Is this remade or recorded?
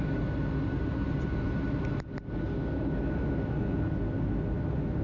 recorded